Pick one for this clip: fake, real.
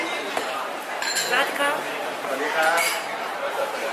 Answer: fake